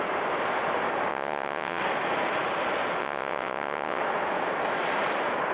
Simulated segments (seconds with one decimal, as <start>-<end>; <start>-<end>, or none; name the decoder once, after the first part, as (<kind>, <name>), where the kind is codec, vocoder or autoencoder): 1.1-1.8 (vocoder, WaveNeXt); 3.0-4.0